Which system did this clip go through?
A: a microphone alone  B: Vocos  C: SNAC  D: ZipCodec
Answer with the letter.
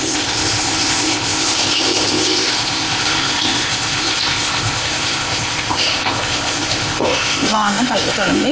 D